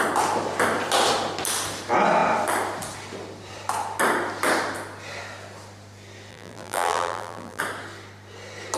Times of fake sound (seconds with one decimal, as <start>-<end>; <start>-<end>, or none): 6.3-7.6